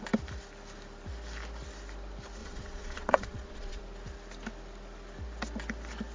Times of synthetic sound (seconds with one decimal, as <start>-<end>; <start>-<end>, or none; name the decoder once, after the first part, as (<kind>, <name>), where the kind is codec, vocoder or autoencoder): 2.4-3.8 (vocoder, Vocos)